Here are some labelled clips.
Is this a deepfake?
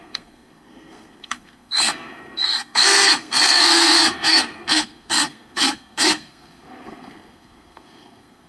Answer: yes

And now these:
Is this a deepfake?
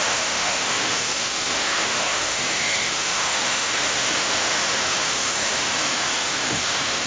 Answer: yes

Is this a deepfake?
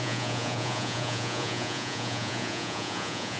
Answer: yes